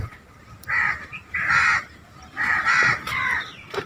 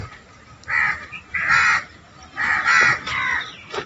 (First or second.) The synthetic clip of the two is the first